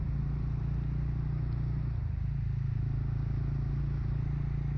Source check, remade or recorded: recorded